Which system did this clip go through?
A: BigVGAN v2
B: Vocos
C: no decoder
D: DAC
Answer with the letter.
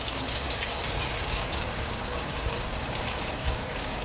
D